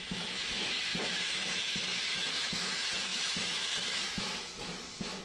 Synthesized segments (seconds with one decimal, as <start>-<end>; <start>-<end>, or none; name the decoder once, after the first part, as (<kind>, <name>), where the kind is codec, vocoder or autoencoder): 0.0-5.2 (autoencoder, DAC-VAE)